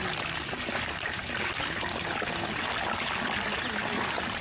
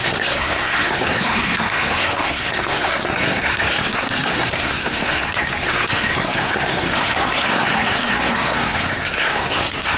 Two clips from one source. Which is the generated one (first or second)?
second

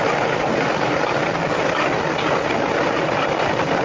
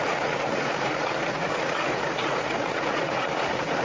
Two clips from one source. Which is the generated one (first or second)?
second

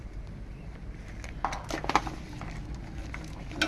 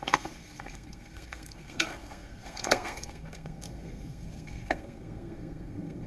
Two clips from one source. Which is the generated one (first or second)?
second